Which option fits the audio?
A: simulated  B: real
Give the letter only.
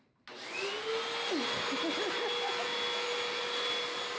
B